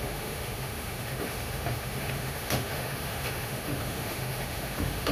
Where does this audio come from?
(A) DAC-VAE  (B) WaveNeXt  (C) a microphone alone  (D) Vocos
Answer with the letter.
A